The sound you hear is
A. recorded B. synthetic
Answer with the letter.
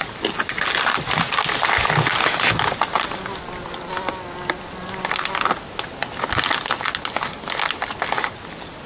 A